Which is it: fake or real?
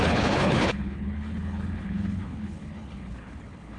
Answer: fake